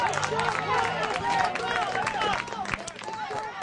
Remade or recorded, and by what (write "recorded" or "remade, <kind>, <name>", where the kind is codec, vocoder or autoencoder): recorded